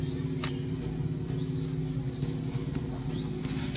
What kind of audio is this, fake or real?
real